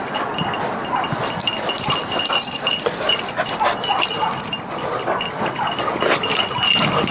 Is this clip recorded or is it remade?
remade